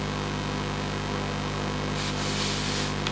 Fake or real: real